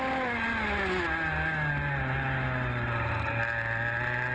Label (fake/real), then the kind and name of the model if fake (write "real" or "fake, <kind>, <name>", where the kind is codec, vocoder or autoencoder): real